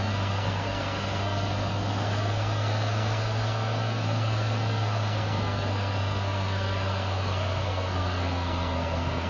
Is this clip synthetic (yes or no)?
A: yes